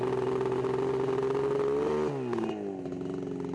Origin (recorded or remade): recorded